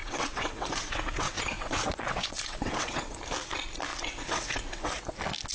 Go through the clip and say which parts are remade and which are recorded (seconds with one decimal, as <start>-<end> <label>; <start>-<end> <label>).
0.0-3.2 remade; 3.2-3.9 recorded; 3.9-5.0 remade; 5.0-5.5 recorded